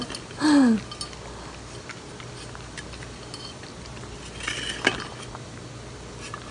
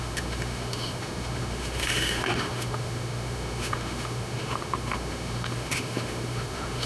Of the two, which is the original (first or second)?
first